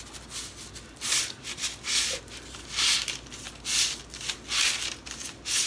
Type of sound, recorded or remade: recorded